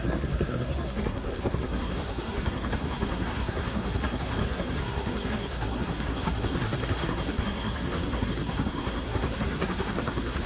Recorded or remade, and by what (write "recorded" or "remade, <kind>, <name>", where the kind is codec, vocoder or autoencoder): remade, codec, SNAC